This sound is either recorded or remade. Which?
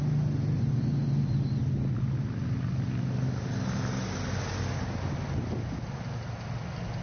recorded